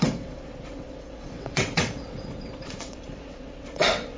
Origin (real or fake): fake